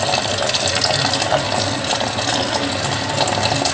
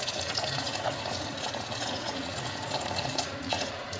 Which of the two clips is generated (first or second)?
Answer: second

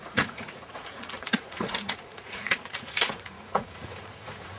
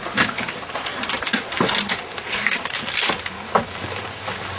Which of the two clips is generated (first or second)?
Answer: first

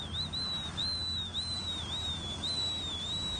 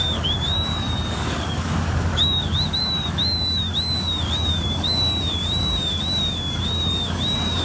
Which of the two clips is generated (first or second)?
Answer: second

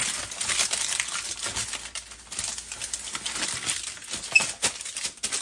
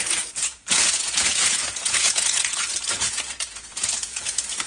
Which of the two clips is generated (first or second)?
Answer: second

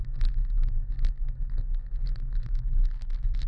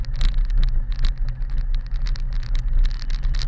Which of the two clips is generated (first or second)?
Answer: first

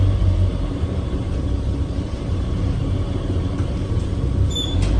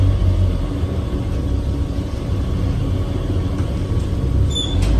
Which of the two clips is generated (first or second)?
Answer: first